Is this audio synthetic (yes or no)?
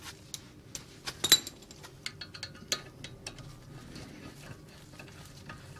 no